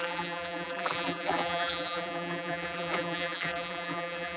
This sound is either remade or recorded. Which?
remade